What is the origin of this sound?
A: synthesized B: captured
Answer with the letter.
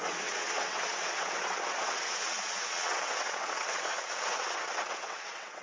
A